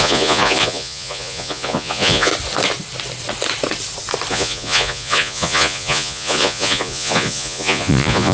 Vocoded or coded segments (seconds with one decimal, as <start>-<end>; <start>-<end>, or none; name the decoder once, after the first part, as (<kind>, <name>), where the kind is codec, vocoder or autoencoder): 0.0-2.3 (vocoder, Vocos); 4.3-8.3